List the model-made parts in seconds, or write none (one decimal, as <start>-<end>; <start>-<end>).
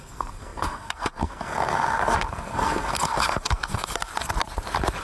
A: 0.0-4.1